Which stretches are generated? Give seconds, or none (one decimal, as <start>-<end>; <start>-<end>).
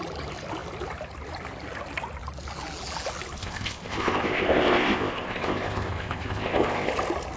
3.4-6.9